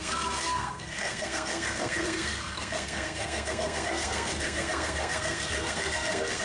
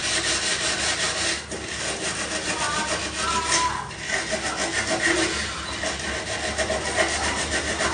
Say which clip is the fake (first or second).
first